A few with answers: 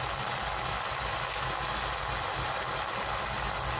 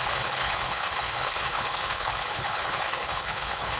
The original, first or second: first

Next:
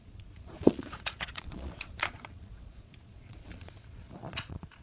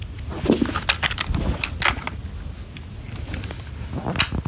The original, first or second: second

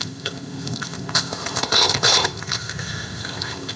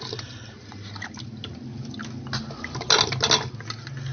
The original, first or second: second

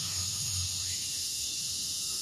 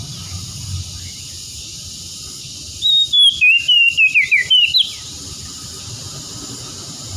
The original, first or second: second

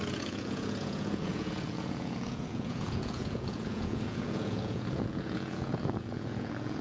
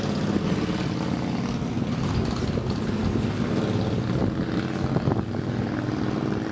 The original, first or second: second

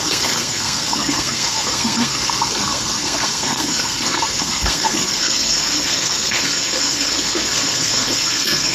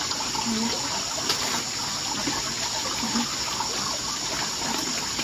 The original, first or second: second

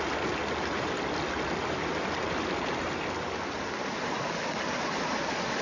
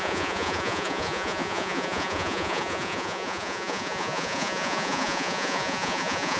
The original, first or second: first